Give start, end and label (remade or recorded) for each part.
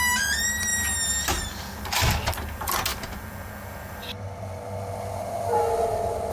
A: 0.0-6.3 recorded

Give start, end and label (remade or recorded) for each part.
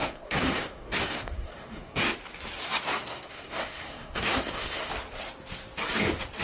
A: 0.0-2.0 remade; 2.0-3.0 recorded; 3.0-4.9 remade; 4.9-6.4 recorded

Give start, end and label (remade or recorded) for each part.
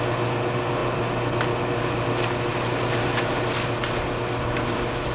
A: 0.0-5.1 recorded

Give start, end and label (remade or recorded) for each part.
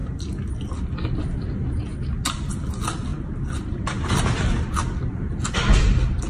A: 0.0-6.3 recorded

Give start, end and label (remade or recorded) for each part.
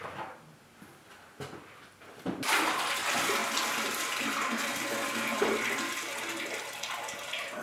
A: 0.0-7.6 recorded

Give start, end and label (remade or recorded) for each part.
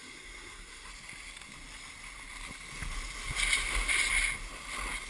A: 0.0-0.9 remade; 0.9-5.1 recorded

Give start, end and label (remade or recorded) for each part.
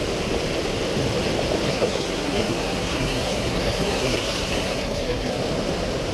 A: 0.0-1.7 recorded; 1.7-5.4 remade; 5.4-6.1 recorded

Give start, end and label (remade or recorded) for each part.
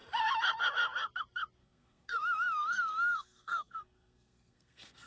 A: 0.0-1.6 recorded; 1.6-5.1 remade